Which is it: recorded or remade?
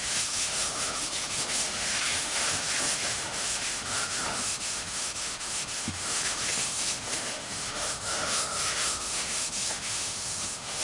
remade